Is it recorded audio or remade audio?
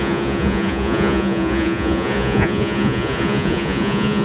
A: remade